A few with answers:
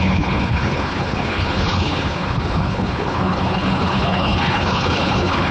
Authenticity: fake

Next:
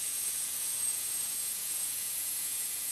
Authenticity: fake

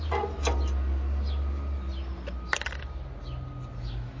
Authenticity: real